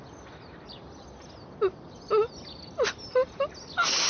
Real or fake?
real